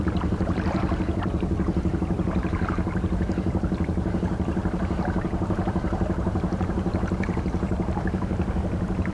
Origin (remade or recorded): remade